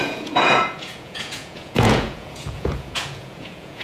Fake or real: fake